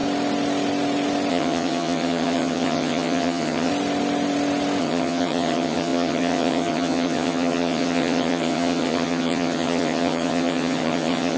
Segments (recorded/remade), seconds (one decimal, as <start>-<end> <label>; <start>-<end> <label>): 0.0-1.3 recorded; 1.3-3.7 remade; 3.7-4.8 recorded; 4.8-11.4 remade